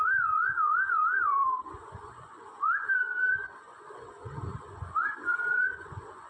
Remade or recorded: remade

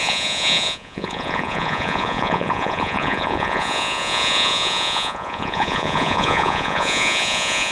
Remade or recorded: remade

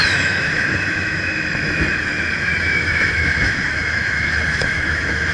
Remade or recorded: remade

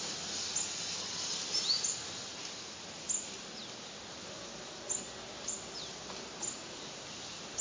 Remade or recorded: recorded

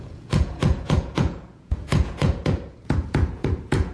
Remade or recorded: remade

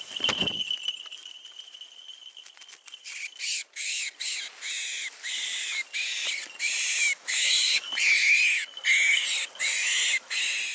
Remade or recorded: recorded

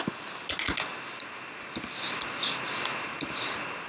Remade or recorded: recorded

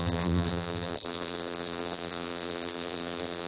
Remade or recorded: remade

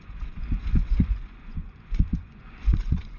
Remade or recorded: remade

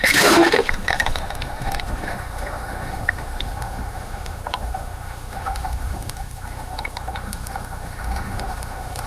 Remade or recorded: remade